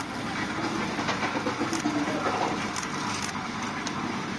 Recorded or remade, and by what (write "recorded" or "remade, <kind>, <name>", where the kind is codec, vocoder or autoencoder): recorded